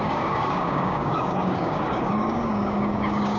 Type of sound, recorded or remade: remade